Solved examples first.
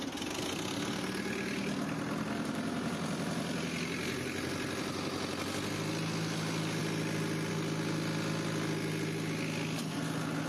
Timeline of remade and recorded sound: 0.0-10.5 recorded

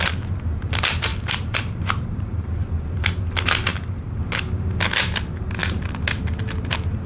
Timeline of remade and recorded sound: 0.0-1.1 recorded; 1.1-3.2 remade; 3.2-3.7 recorded; 3.7-4.2 remade; 4.2-7.1 recorded

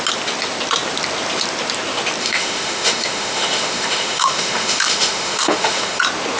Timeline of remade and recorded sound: 0.0-2.2 recorded; 2.2-6.0 remade; 6.0-6.4 recorded

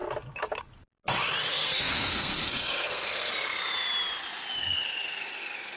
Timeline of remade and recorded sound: 0.0-1.5 recorded; 1.5-3.3 remade; 3.3-4.6 recorded; 4.6-5.8 remade

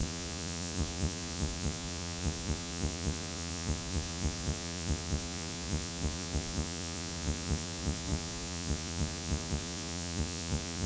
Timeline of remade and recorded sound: 0.0-10.9 remade

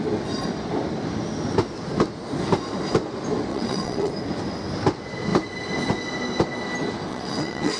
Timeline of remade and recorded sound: 0.0-3.5 recorded; 3.5-4.1 remade; 4.1-7.1 recorded; 7.1-7.8 remade

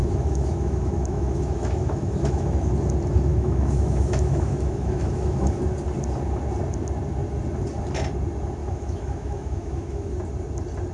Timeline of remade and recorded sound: 0.0-2.7 remade; 2.7-3.3 recorded; 3.3-5.6 remade; 5.6-8.6 recorded; 8.6-10.1 remade; 10.1-10.9 recorded

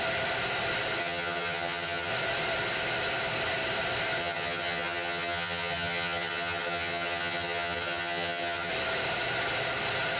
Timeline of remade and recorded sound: 0.0-1.0 recorded; 1.0-2.1 remade; 2.1-4.2 recorded; 4.2-8.7 remade; 8.7-10.2 recorded